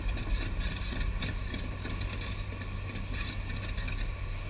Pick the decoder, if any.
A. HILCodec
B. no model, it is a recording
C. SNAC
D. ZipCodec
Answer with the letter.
B